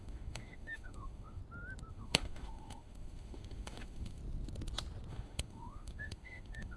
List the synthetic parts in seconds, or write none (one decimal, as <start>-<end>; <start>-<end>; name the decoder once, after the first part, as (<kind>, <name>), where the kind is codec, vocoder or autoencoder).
0.0-1.4 (autoencoder, DAC-VAE); 1.9-4.2; 5.1-6.8